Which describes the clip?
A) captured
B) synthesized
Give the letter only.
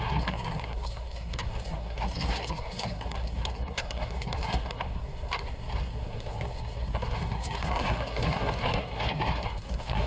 B